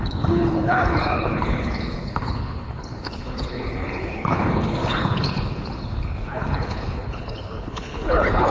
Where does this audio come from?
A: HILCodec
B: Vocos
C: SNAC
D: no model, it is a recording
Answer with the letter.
A